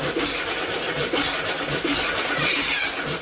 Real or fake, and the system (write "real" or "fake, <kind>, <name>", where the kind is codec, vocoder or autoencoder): real